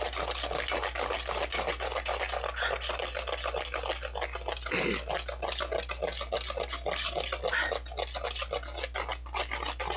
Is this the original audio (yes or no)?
yes